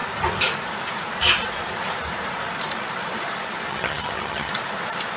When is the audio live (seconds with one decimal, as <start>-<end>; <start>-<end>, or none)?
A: 0.0-3.7; 4.5-5.2

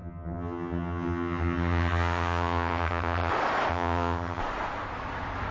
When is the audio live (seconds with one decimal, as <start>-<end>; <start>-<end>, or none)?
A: 3.3-3.7; 4.4-5.5

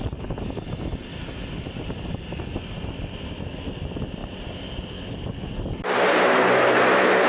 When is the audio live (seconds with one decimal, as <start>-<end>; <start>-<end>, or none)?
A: 0.0-7.3

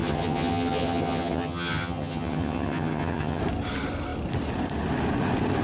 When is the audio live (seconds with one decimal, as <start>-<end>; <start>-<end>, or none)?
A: 3.4-5.6

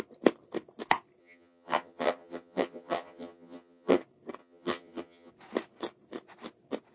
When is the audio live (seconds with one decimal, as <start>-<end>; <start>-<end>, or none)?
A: 0.0-1.2; 4.0-4.4; 5.3-6.9

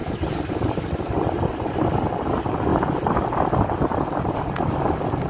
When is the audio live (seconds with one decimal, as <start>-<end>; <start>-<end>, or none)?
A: 0.0-5.3

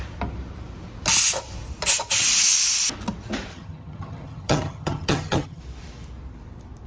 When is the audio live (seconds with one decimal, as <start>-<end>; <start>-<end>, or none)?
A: 0.0-3.5; 5.6-6.9

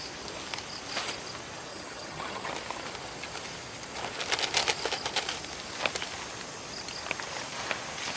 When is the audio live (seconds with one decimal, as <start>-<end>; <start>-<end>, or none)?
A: 0.0-1.7; 2.5-8.2